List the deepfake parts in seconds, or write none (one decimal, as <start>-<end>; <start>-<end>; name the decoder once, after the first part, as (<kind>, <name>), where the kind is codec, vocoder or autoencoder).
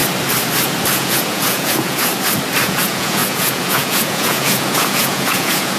0.9-2.1 (vocoder, Vocos); 2.6-5.8